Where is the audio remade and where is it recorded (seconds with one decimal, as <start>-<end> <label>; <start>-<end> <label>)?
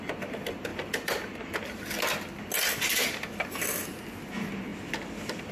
0.0-0.7 recorded; 0.7-4.0 remade; 4.0-4.7 recorded; 4.7-5.5 remade